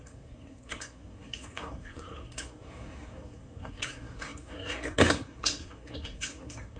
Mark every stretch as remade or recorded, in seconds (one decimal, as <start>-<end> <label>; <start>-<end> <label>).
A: 0.0-6.8 remade